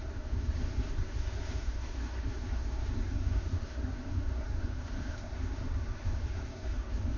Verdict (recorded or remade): remade